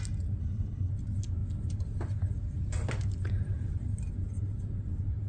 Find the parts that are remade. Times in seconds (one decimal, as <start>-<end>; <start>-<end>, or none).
0.4-0.9

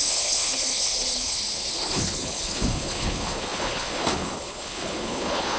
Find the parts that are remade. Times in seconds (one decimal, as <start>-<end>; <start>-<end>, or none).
0.0-5.6

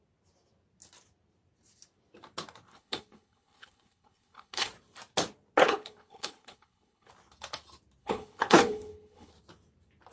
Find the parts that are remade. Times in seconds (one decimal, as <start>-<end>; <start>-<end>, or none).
2.7-4.7; 5.6-7.1; 8.0-9.3

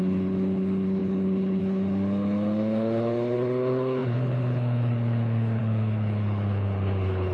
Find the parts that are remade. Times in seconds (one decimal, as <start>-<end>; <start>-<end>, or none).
0.0-7.3